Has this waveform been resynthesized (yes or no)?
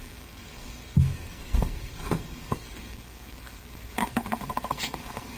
yes